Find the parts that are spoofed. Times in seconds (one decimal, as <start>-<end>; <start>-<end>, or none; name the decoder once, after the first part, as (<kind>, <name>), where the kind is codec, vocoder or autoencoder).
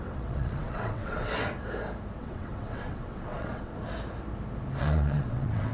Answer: 0.0-1.4 (vocoder, WaveNeXt); 2.2-3.7; 4.8-5.7